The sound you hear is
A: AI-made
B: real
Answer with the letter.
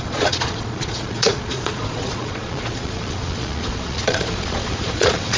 A